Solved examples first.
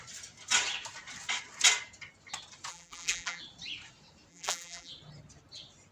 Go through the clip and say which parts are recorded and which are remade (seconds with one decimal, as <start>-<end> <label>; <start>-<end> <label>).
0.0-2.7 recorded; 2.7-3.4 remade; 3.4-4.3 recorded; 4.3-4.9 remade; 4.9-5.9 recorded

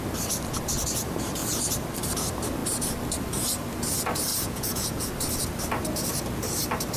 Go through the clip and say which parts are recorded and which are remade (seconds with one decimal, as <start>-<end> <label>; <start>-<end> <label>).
0.0-4.3 recorded; 4.3-5.1 remade; 5.1-7.0 recorded

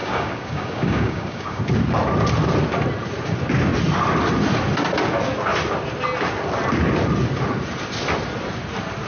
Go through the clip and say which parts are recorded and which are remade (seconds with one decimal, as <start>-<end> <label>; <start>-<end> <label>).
0.0-1.6 remade; 1.6-9.1 recorded